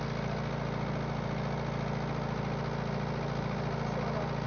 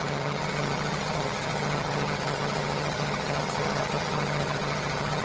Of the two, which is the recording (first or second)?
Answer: first